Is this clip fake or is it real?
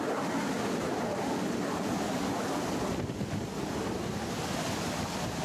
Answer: real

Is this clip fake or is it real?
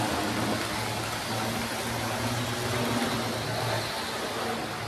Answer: real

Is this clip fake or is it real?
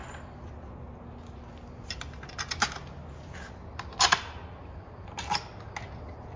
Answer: real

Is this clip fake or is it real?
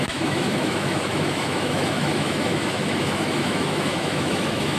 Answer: fake